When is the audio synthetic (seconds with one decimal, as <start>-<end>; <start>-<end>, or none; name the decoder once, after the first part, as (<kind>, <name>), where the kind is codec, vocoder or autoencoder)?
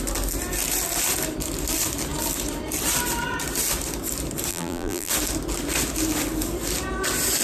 4.5-5.1 (vocoder, BigVGAN v2)